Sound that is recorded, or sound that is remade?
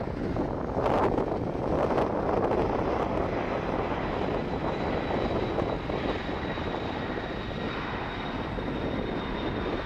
recorded